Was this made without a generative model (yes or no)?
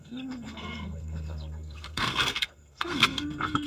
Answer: no